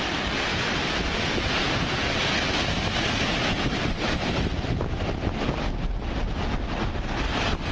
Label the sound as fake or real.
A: real